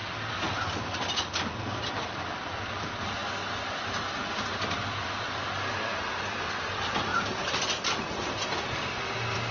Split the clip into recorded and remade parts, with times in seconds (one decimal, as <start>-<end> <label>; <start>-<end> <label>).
0.0-9.5 remade

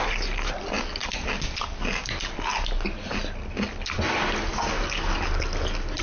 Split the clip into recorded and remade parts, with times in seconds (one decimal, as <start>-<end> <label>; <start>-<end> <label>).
0.0-6.0 recorded